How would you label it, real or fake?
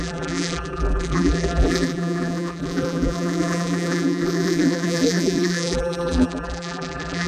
fake